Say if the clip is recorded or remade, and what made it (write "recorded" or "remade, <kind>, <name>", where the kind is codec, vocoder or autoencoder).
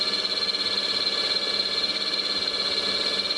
recorded